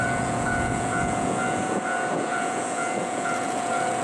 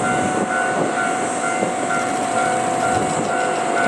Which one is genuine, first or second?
second